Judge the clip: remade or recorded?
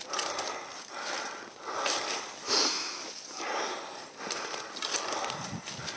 recorded